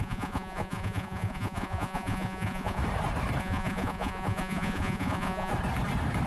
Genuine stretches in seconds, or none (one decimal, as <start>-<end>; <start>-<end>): 2.8-3.4; 5.5-6.3